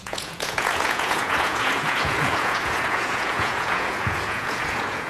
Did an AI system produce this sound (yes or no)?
yes